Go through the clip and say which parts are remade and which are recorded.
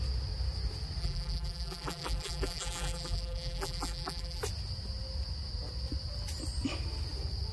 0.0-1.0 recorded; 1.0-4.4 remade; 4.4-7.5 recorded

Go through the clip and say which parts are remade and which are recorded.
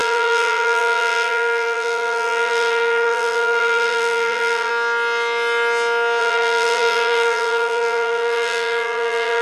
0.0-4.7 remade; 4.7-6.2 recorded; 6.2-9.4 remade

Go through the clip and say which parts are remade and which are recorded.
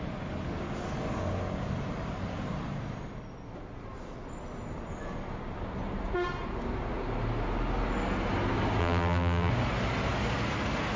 0.0-8.8 recorded; 8.8-9.5 remade; 9.5-11.0 recorded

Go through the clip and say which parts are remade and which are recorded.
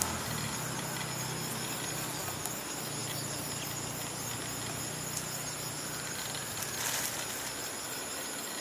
0.0-8.6 recorded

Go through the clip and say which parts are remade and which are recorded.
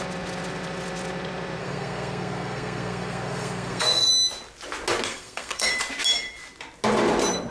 0.0-1.6 recorded; 1.6-4.1 remade; 4.1-5.1 recorded; 5.1-5.7 remade; 5.7-7.5 recorded